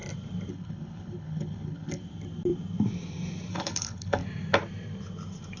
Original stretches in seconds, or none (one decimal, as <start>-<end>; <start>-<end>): 0.0-0.5; 2.0-3.5; 4.2-5.6